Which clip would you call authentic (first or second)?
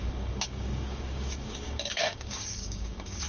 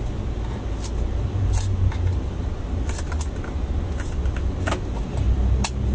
second